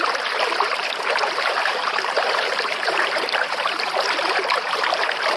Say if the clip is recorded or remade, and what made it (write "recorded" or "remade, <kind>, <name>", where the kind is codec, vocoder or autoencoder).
remade, vocoder, BigVGAN v2